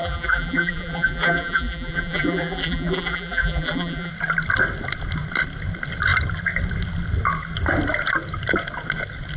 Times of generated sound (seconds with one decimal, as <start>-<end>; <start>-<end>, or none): 0.0-4.1